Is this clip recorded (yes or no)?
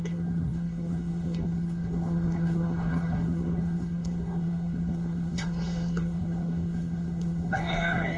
no